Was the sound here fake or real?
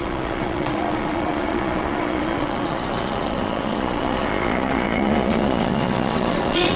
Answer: fake